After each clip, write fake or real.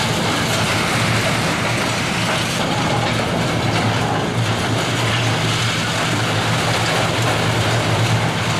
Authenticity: real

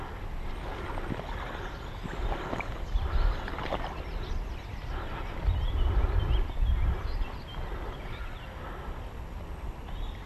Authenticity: real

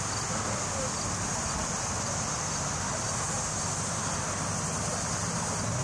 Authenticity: real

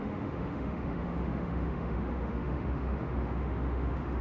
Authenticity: fake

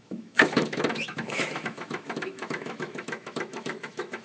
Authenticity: fake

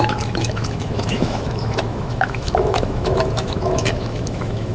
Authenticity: fake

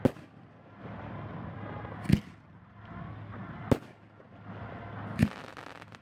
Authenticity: real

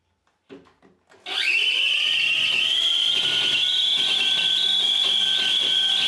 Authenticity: real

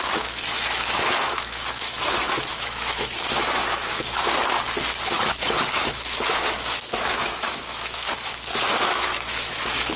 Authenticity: fake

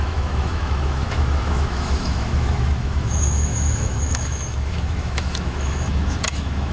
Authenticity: fake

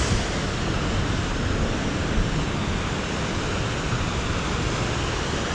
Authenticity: real